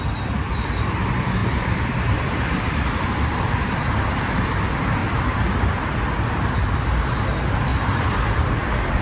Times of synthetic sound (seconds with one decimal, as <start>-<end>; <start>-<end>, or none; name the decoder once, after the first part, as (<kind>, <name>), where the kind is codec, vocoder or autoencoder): 1.4-3.8 (vocoder, BigVGAN v2); 5.0-5.5; 7.7-9.0